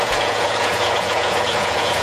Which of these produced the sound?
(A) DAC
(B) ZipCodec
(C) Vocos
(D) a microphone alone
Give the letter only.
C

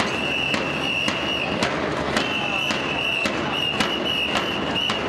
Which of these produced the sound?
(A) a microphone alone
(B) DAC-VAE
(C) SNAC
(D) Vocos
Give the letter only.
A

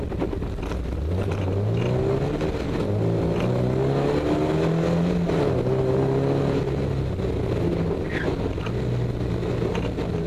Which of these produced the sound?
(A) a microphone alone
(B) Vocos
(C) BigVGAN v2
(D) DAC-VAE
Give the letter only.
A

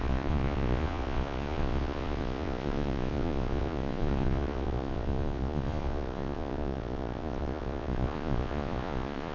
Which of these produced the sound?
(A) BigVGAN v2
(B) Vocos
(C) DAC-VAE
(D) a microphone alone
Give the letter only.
B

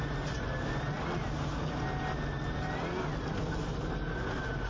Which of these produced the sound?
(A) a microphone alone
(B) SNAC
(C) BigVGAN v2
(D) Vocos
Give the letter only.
A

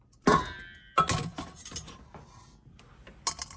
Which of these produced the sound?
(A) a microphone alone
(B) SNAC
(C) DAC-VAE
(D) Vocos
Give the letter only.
A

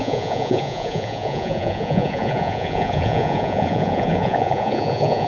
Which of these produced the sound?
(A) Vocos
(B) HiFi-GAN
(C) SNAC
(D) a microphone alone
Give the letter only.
A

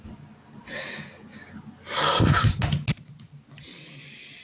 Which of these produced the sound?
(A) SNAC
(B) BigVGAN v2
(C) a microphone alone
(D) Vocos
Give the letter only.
C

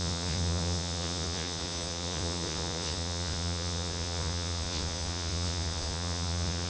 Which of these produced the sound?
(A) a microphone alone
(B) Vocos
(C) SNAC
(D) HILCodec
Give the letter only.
B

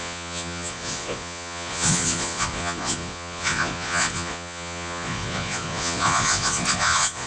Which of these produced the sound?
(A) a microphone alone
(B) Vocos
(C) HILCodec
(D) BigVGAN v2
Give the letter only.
B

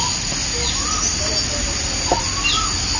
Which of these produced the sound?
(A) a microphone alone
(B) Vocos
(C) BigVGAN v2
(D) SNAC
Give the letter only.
A